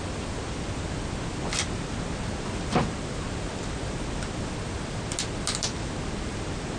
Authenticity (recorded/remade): recorded